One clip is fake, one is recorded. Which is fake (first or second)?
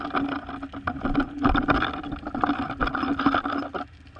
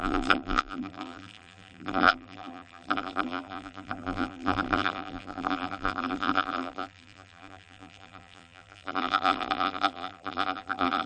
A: second